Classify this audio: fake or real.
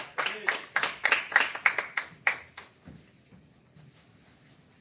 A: real